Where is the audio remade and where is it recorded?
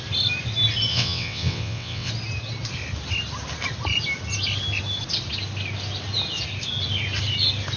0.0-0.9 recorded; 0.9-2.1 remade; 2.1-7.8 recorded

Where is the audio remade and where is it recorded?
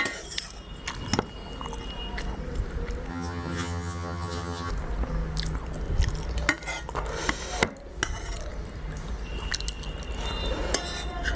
0.0-3.1 recorded; 3.1-4.7 remade; 4.7-11.4 recorded